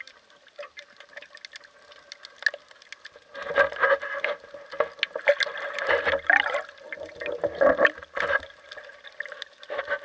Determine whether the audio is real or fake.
real